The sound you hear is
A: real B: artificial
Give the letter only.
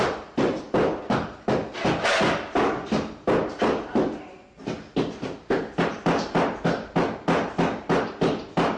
A